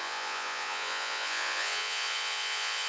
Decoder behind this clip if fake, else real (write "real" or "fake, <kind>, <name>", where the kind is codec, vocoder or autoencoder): fake, vocoder, Vocos